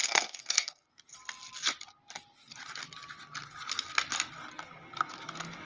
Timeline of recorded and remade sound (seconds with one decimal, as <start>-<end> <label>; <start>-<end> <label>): 0.0-0.9 remade; 0.9-5.7 recorded